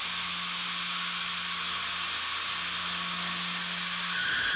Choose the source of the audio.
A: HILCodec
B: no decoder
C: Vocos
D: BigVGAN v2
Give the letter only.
B